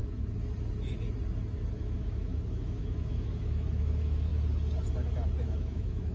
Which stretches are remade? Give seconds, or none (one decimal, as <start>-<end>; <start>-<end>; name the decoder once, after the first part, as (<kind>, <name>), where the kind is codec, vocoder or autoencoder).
1.7-4.3 (autoencoder, DAC-VAE); 5.4-6.1